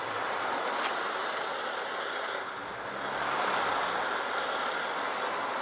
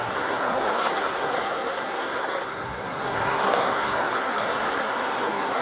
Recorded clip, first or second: first